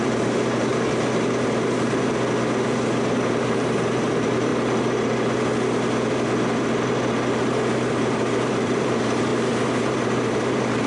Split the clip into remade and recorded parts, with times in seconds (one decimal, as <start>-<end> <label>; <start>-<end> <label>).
0.0-0.7 remade; 0.7-3.3 recorded; 3.3-4.5 remade; 4.5-7.8 recorded; 7.8-10.9 remade

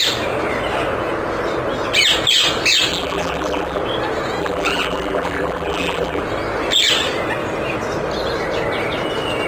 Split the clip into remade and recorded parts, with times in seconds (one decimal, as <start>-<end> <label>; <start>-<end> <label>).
0.0-2.9 recorded; 2.9-3.8 remade; 3.8-4.4 recorded; 4.4-6.2 remade; 6.2-9.5 recorded

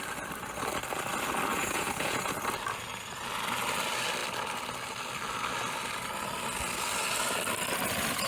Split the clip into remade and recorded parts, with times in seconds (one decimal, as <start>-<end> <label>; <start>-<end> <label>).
0.0-1.5 recorded; 1.5-2.3 remade; 2.3-8.3 recorded

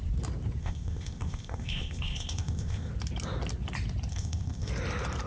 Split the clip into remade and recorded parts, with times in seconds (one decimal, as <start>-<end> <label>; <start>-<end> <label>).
0.0-0.6 recorded; 0.6-2.9 remade; 2.9-4.1 recorded; 4.1-4.7 remade; 4.7-5.3 recorded

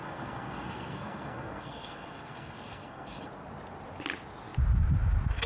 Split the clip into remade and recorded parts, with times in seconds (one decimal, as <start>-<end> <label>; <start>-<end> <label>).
0.0-3.3 remade; 3.3-5.5 recorded